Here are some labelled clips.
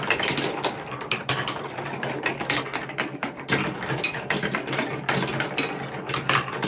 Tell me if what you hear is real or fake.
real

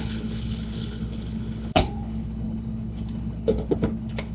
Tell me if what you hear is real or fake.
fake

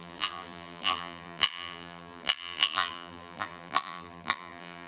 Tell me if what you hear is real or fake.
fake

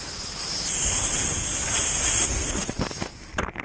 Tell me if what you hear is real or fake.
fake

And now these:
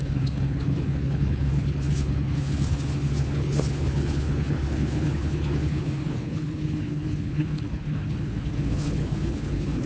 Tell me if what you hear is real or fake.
fake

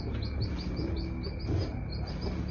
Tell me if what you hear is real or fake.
real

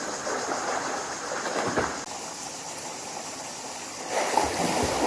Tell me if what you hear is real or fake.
real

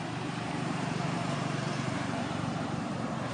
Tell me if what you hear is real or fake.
fake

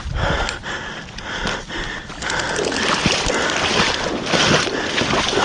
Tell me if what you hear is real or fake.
real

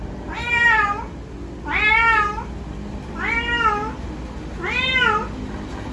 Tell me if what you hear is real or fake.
real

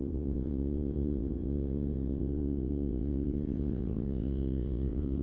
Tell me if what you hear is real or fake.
fake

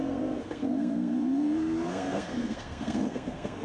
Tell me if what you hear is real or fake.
fake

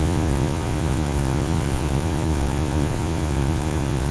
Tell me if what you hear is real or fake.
fake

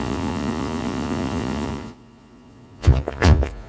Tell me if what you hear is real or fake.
fake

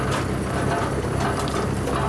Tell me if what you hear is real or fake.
real